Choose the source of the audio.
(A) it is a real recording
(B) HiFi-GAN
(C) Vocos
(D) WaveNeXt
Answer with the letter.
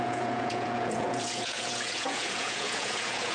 C